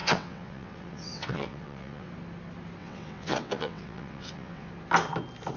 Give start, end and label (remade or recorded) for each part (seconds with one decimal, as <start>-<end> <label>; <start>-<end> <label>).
0.0-2.1 remade; 2.1-2.8 recorded; 2.8-4.7 remade; 4.7-5.6 recorded